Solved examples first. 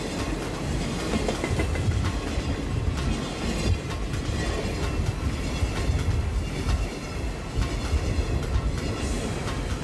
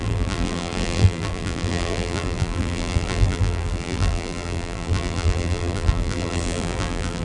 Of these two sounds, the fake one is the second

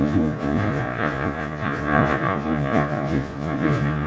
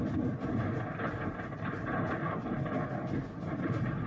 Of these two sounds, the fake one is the first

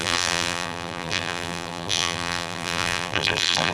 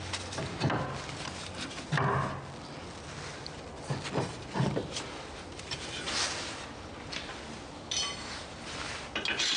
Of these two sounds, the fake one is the first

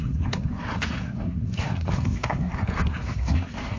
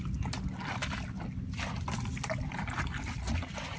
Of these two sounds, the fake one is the first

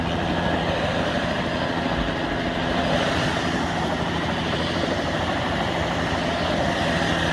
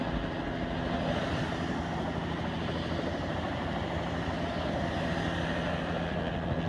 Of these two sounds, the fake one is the first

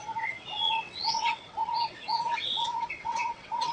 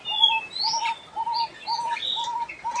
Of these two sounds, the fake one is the first